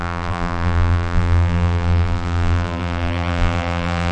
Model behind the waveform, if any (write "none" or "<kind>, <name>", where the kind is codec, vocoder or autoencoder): vocoder, BigVGAN v2